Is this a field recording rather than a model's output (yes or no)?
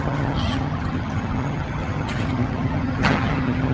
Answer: no